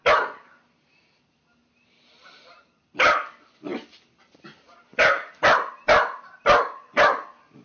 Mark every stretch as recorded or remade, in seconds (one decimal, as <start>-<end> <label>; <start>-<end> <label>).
0.0-7.6 recorded

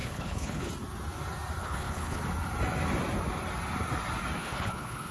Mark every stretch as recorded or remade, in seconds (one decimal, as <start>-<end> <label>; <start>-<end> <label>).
0.0-0.7 remade; 0.7-1.6 recorded; 1.6-2.2 remade; 2.2-4.4 recorded; 4.4-5.1 remade

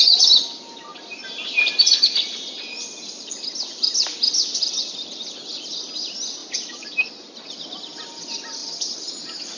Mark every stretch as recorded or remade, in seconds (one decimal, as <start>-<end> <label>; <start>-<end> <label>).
0.0-0.9 recorded; 0.9-4.9 remade; 4.9-6.4 recorded; 6.4-7.1 remade; 7.1-9.6 recorded

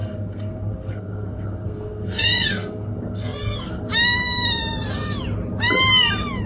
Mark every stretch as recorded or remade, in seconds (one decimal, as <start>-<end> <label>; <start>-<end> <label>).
0.0-3.9 remade; 3.9-6.5 recorded

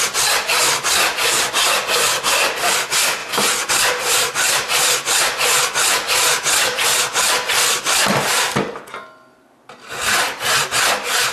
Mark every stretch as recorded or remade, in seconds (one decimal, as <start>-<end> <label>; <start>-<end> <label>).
0.0-11.3 recorded

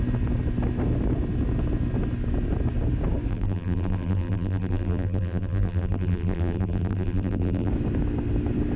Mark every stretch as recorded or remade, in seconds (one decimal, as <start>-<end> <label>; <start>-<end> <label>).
0.0-3.3 recorded; 3.3-7.7 remade; 7.7-8.8 recorded

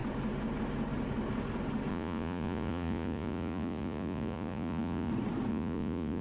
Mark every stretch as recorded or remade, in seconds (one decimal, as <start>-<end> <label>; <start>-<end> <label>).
0.0-1.9 recorded; 1.9-5.1 remade; 5.1-5.5 recorded; 5.5-6.2 remade

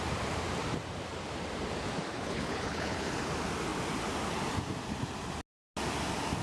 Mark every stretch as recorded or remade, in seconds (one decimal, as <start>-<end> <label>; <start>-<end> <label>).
0.0-2.1 recorded; 2.1-3.1 remade; 3.1-6.4 recorded